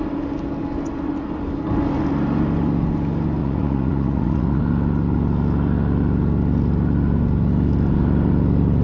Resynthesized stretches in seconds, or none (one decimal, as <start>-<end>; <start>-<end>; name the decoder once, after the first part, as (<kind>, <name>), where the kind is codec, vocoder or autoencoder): 3.4-4.6 (vocoder, Vocos)